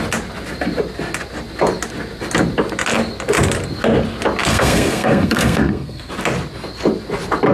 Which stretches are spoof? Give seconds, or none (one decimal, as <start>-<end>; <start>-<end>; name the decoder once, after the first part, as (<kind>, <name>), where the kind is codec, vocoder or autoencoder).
4.5-6.1 (codec, SNAC)